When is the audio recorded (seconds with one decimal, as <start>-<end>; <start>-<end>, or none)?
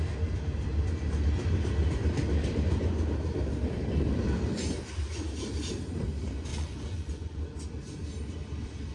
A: 0.0-6.5; 7.5-8.9